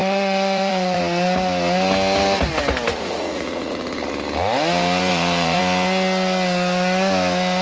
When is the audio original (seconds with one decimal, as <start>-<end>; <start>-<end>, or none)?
1.0-2.9; 4.1-5.1; 5.6-7.6